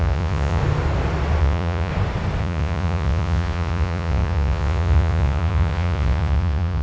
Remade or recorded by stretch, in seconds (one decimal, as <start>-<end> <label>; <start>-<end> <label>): 0.0-0.6 remade; 0.6-1.4 recorded; 1.4-1.9 remade; 1.9-2.4 recorded; 2.4-6.8 remade